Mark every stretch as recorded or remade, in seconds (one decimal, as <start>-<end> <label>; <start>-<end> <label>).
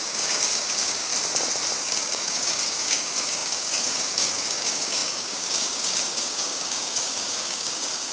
0.0-1.1 remade; 1.1-1.8 recorded; 1.8-8.1 remade